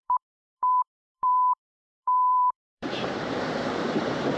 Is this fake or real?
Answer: fake